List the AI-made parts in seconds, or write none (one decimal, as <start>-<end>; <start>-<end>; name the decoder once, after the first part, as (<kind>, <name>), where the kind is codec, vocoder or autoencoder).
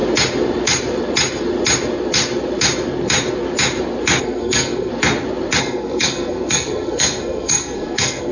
4.2-4.9 (codec, SNAC); 5.6-8.3